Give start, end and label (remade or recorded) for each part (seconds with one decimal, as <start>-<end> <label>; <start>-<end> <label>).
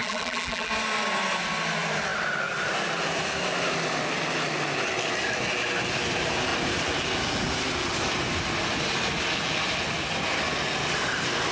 0.0-0.7 remade; 0.7-11.5 recorded